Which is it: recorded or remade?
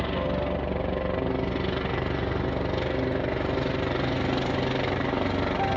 recorded